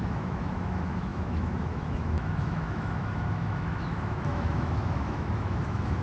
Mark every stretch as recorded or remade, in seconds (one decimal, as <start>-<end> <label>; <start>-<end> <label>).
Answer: 0.0-6.0 remade